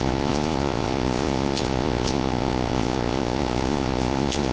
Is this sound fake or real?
fake